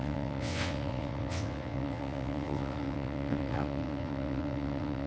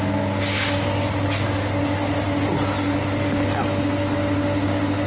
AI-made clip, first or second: first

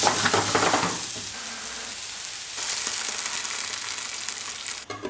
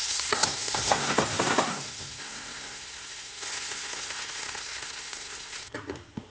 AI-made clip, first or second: second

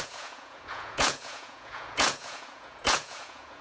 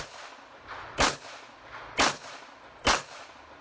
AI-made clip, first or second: first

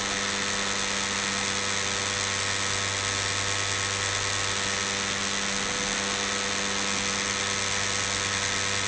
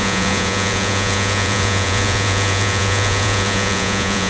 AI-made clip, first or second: second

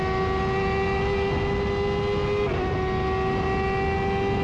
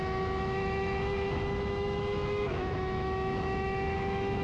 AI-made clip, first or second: second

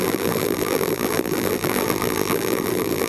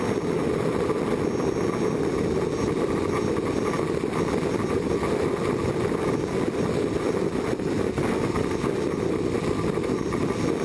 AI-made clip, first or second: first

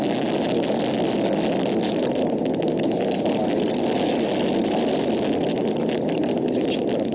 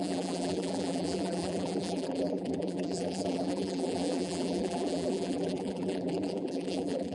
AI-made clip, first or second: second